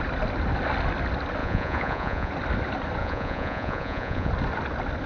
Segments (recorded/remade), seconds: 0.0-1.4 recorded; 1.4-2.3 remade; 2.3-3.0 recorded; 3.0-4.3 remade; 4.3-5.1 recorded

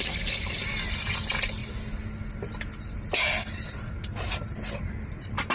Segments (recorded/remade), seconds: 0.0-5.5 recorded

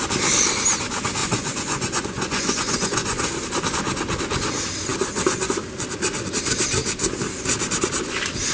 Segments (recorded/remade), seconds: 0.0-1.2 recorded; 1.2-3.3 remade; 3.3-8.5 recorded

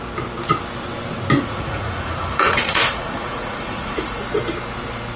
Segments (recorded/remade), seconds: 0.0-1.4 recorded; 1.4-4.2 remade; 4.2-5.2 recorded

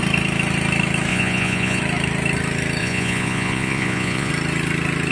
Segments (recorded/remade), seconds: 0.0-1.1 recorded; 1.1-1.8 remade; 1.8-2.8 recorded; 2.8-4.3 remade; 4.3-5.1 recorded

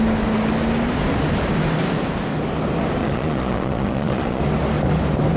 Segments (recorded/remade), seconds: 0.0-3.0 recorded; 3.0-4.4 remade; 4.4-5.4 recorded